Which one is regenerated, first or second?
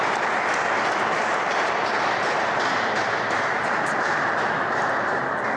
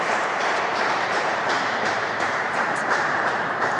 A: second